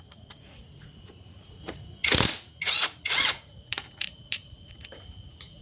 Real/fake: fake